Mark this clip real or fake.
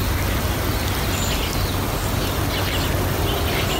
real